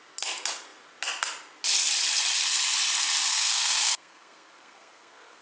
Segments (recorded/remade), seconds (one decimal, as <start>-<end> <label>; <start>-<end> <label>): 0.0-3.3 recorded; 3.3-5.4 remade